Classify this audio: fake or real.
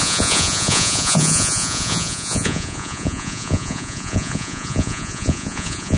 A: fake